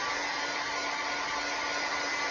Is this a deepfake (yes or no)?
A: no